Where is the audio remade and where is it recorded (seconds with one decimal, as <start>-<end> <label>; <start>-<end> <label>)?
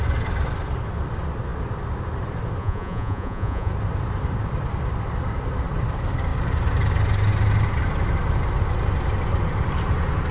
0.0-2.6 recorded; 2.6-3.7 remade; 3.7-10.3 recorded